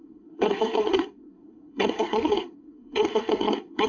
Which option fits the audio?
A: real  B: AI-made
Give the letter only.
B